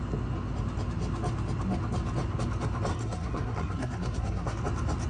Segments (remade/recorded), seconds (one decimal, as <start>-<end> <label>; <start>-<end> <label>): 0.0-2.9 recorded; 2.9-4.6 remade; 4.6-5.1 recorded